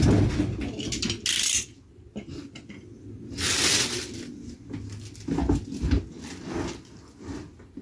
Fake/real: real